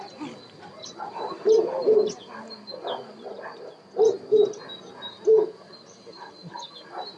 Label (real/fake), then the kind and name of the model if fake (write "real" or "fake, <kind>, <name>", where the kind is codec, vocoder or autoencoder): real